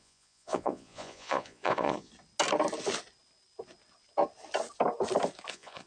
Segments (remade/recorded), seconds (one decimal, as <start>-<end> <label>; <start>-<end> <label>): 0.0-2.1 remade; 2.1-5.5 recorded; 5.5-5.9 remade